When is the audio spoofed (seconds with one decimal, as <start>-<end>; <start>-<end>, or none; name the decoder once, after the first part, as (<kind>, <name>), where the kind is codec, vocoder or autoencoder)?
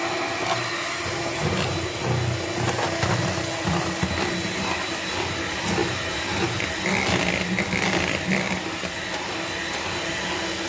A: none